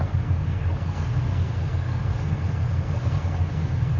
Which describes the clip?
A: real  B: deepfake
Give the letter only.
B